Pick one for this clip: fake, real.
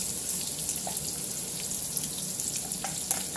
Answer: real